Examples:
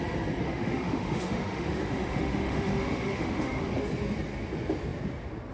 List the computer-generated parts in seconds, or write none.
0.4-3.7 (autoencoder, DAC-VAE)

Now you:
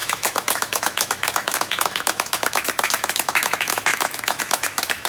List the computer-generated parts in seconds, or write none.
0.0-5.1 (autoencoder, DAC-VAE)

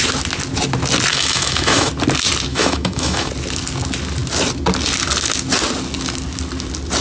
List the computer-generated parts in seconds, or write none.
1.1-1.9 (autoencoder, DAC-VAE); 2.5-3.3

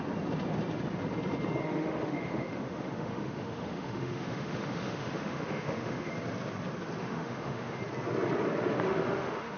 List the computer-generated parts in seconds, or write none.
1.6-6.1 (autoencoder, DAC-VAE); 7.0-7.8; 8.9-9.6

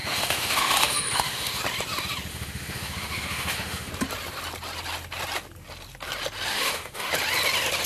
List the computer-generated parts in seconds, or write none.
0.0-1.6 (autoencoder, DAC-VAE); 2.3-3.9; 6.5-7.1

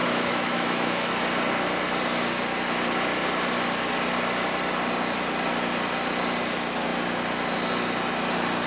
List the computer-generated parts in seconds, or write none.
0.0-1.1 (autoencoder, DAC-VAE)

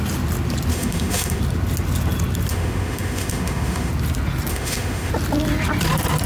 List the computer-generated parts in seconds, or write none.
0.7-1.4 (autoencoder, DAC-VAE); 2.5-3.9; 4.5-5.1

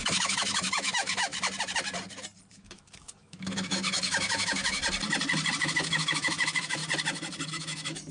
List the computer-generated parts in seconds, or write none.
0.0-1.3 (autoencoder, DAC-VAE); 2.5-4.8; 5.6-6.8; 7.5-8.1